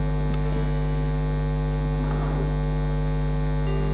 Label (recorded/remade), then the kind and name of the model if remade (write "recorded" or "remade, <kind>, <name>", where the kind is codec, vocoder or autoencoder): recorded